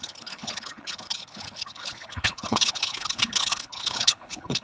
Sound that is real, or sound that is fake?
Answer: fake